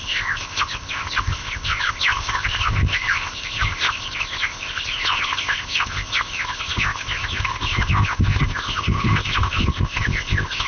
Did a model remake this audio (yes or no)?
yes